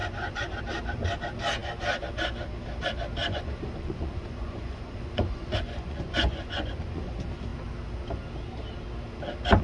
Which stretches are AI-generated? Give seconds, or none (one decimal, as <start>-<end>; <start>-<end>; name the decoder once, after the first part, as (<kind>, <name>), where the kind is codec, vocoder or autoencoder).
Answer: 0.0-0.6 (vocoder, Vocos); 3.2-7.1